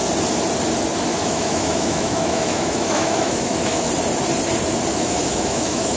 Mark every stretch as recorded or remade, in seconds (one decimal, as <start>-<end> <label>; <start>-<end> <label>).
0.0-1.1 recorded; 1.1-3.9 remade; 3.9-4.9 recorded; 4.9-6.0 remade